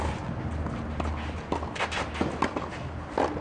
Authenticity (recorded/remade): recorded